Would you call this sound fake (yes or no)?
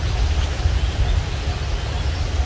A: no